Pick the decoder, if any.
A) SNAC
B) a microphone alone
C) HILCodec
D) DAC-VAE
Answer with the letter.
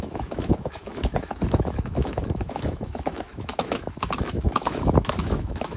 D